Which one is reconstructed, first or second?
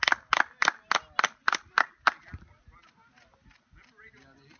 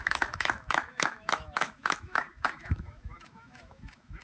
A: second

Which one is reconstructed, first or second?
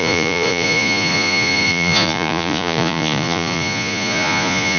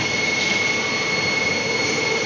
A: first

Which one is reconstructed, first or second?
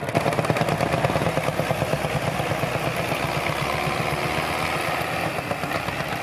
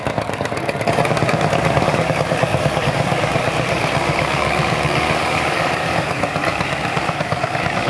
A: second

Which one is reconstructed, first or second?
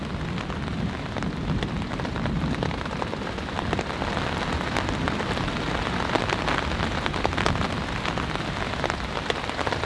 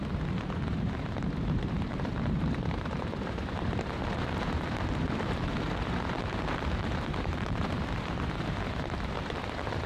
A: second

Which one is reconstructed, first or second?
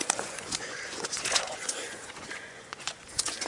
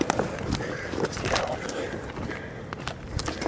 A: first